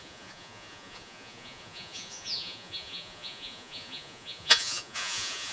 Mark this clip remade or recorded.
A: remade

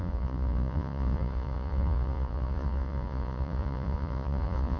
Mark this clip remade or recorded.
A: remade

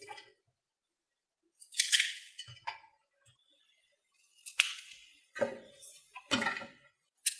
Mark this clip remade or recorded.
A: remade